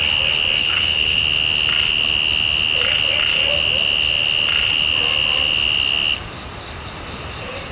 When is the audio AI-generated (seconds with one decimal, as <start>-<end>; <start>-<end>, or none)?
0.6-1.2